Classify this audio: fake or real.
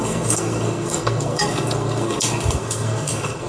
fake